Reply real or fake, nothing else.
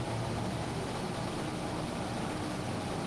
real